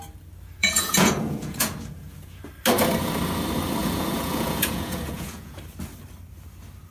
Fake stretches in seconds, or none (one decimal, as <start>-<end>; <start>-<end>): 0.6-2.4; 3.8-5.6